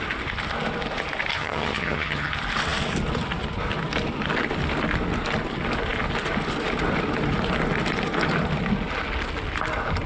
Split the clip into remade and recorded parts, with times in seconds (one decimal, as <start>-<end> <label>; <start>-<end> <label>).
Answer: 0.0-1.3 recorded; 1.3-2.3 remade; 2.3-10.1 recorded

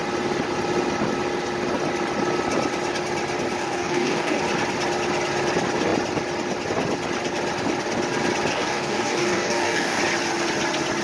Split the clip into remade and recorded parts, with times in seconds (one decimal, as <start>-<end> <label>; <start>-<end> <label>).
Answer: 0.0-3.6 recorded; 3.6-4.4 remade; 4.4-8.5 recorded; 8.5-10.0 remade; 10.0-11.0 recorded

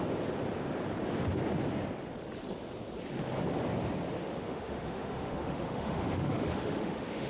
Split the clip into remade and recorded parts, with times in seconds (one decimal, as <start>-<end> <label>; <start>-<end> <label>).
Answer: 0.0-4.2 recorded; 4.2-7.3 remade

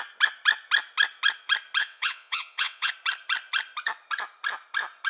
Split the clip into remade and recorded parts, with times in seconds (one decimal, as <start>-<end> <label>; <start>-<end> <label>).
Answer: 0.0-1.8 recorded; 1.8-2.9 remade; 2.9-5.1 recorded